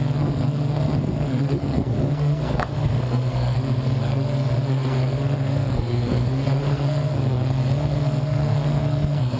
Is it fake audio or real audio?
fake